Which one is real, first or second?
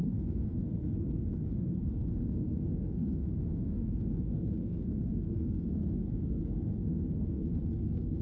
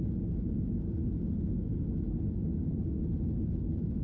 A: second